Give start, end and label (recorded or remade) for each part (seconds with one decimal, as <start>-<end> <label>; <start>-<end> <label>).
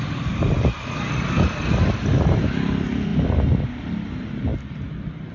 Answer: 0.0-5.3 recorded